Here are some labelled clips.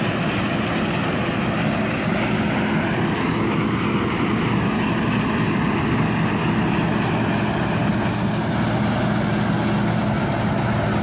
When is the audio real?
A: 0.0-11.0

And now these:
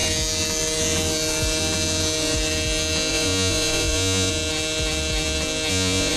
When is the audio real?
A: 0.0-3.1; 4.3-5.7

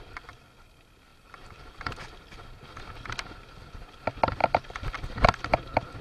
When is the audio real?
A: 0.0-1.1; 2.0-6.0

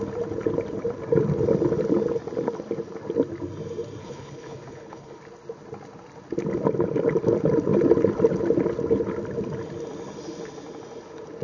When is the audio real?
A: 0.0-4.0; 5.2-11.4

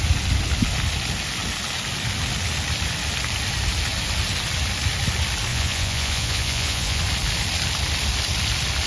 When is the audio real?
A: 0.0-5.5; 7.0-8.9

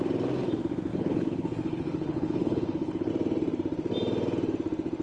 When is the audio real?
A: 0.0-0.9; 3.1-5.0

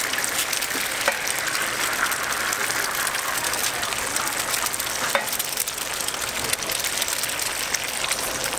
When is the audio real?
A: 0.0-8.6

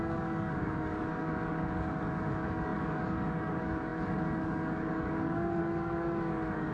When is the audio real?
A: none